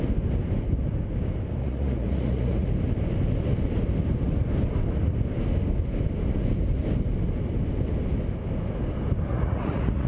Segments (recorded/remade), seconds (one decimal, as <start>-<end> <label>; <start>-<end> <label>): 0.0-1.6 recorded; 1.6-2.7 remade; 2.7-9.3 recorded; 9.3-10.1 remade